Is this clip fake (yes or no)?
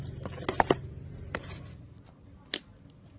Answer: no